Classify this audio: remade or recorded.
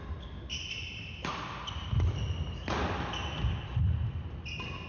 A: recorded